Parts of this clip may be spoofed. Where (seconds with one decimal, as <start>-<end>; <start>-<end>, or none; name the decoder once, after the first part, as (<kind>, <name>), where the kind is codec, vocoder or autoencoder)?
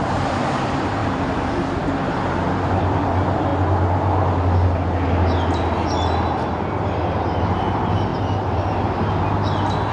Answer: 0.0-3.5 (vocoder, BigVGAN v2); 7.5-8.1